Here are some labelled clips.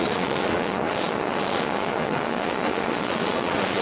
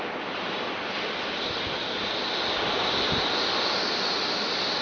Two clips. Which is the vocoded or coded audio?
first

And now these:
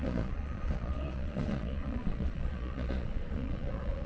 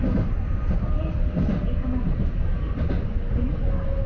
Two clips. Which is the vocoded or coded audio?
first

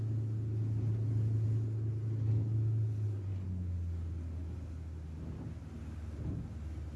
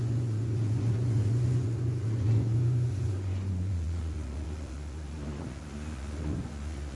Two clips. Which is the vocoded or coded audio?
second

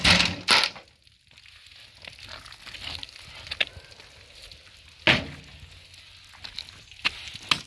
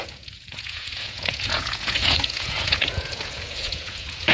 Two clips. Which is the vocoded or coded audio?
second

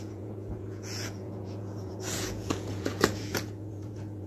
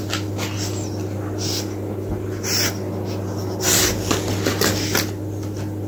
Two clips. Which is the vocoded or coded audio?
first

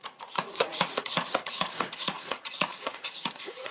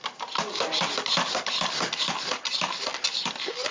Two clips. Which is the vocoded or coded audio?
first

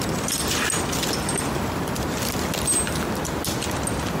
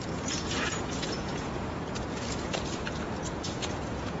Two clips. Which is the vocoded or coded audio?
second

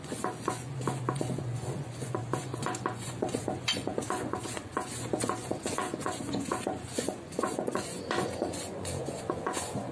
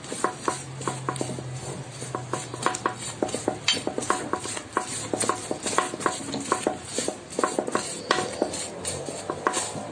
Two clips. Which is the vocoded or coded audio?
first